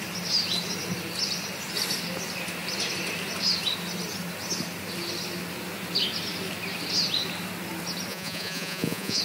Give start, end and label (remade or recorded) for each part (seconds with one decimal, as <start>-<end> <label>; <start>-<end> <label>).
0.0-8.1 recorded; 8.1-9.2 remade